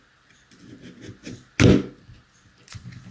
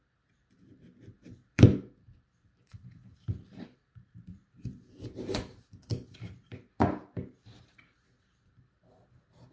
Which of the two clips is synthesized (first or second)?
second